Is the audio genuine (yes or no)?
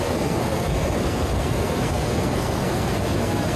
no